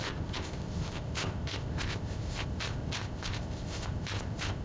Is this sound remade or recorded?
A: remade